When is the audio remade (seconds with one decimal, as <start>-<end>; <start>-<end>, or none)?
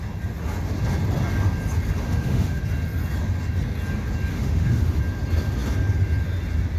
2.0-2.6; 4.3-5.0